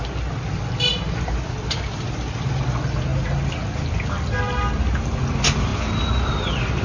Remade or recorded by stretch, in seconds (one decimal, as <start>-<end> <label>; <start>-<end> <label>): 0.0-6.8 recorded

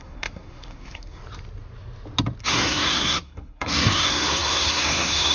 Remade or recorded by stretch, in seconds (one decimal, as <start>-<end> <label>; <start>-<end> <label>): 0.0-1.2 remade; 1.2-2.4 recorded; 2.4-5.3 remade